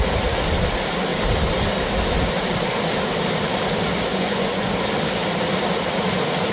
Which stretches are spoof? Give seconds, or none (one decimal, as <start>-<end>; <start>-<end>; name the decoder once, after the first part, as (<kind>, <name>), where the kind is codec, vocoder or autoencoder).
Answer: 4.1-4.7 (vocoder, Vocos)